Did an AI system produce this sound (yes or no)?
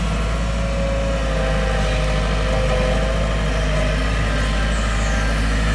no